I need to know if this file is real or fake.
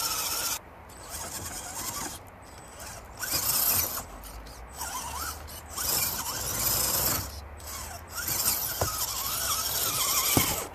real